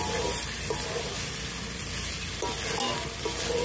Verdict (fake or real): real